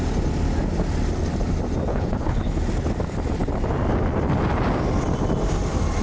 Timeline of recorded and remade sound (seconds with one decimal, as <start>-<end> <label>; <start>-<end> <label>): 0.0-1.9 recorded; 1.9-2.6 remade; 2.6-6.0 recorded